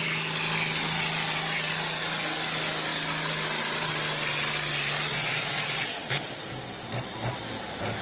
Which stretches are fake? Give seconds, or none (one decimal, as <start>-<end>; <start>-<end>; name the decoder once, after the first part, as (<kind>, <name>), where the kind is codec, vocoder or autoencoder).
5.1-6.6 (vocoder, Vocos)